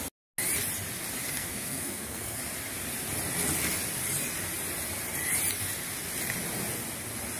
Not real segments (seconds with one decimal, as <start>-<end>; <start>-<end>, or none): 1.2-2.4